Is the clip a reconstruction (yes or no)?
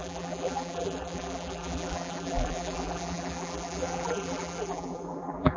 yes